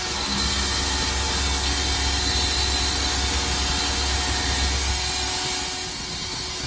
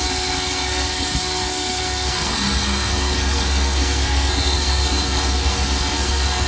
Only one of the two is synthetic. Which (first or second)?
second